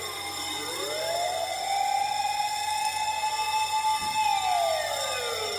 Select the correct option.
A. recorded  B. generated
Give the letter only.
A